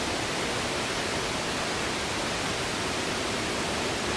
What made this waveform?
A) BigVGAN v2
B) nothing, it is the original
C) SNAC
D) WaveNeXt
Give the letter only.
B